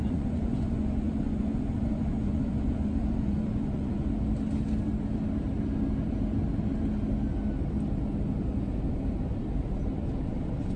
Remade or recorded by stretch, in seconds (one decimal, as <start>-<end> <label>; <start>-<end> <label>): 0.0-4.1 remade; 4.1-10.8 recorded